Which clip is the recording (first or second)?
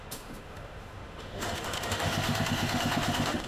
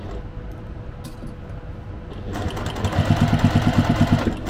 second